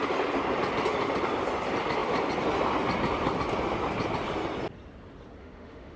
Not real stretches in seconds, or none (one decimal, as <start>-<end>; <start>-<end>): 5.4-6.0